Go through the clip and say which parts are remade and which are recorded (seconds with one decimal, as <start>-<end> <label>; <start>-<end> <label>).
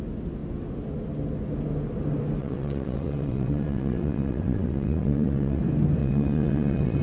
0.0-2.4 recorded; 2.4-5.6 remade; 5.6-6.0 recorded; 6.0-7.0 remade